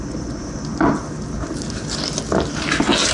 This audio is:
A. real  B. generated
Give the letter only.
A